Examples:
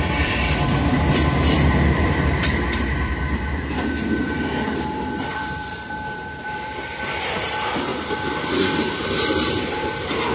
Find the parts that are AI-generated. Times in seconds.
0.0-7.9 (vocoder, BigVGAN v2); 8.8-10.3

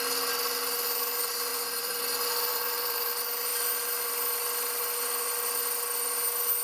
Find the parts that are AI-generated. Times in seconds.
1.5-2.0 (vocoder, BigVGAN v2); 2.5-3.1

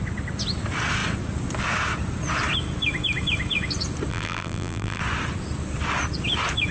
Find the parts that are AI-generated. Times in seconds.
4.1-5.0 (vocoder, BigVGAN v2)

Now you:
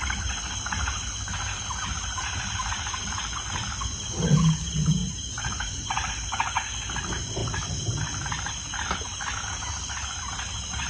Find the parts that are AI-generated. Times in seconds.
5.0-6.1 (vocoder, BigVGAN v2)